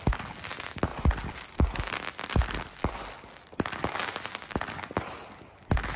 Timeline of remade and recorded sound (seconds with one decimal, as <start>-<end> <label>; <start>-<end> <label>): 0.0-6.0 recorded